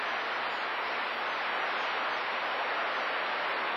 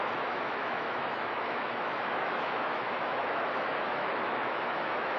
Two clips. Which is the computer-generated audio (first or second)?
second